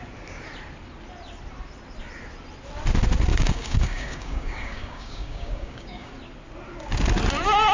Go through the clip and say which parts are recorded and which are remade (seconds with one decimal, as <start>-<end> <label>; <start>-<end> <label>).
0.0-3.3 recorded; 3.3-6.1 remade; 6.1-7.7 recorded